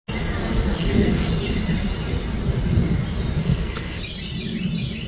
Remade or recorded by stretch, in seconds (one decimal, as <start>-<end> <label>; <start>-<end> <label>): 0.0-0.4 recorded; 0.4-1.3 remade; 1.3-3.4 recorded; 3.4-4.0 remade; 4.0-5.1 recorded